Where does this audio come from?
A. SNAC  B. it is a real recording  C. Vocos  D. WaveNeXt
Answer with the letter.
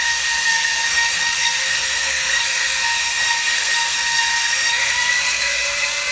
A